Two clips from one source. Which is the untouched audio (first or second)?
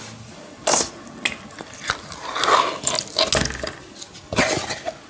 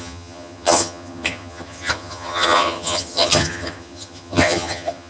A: first